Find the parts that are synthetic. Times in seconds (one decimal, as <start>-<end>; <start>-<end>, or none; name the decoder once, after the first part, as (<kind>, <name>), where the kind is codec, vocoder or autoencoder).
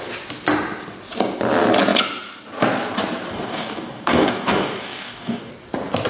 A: 3.3-5.5 (codec, DAC)